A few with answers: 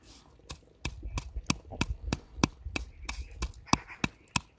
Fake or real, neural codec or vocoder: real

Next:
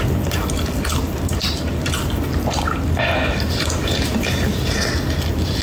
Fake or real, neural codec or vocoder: real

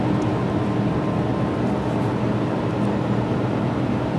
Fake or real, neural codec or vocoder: real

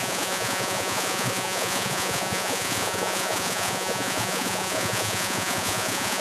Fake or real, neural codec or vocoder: fake, vocoder, Vocos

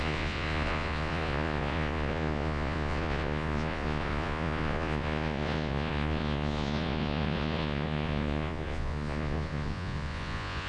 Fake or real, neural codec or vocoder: fake, vocoder, Vocos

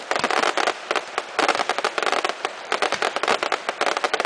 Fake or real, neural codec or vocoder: real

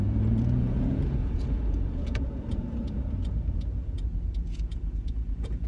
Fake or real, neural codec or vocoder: fake, vocoder, Vocos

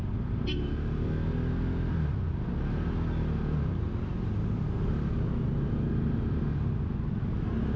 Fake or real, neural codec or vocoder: real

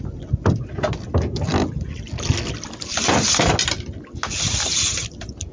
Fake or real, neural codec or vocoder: real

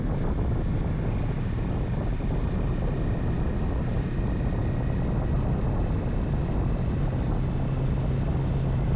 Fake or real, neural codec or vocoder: real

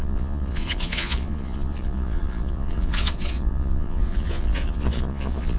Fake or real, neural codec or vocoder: fake, vocoder, Vocos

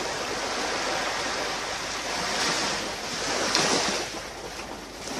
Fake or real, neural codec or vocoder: real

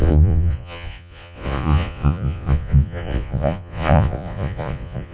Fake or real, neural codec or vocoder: fake, vocoder, Vocos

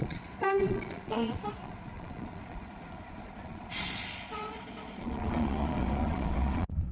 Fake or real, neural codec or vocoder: fake, vocoder, Vocos